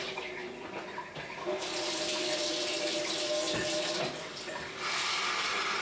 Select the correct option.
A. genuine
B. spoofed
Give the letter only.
A